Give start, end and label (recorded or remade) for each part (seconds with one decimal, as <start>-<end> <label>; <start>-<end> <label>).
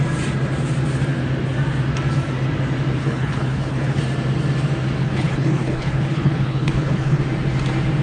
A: 0.0-3.0 recorded; 3.0-4.0 remade; 4.0-5.0 recorded; 5.0-7.2 remade; 7.2-8.0 recorded